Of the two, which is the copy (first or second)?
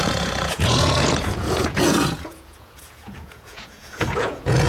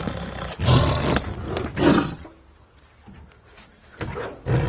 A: first